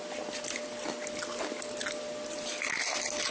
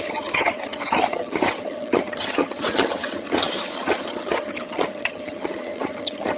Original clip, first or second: first